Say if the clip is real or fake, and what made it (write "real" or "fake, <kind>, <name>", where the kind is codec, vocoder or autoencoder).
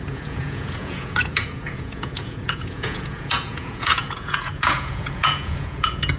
fake, vocoder, Vocos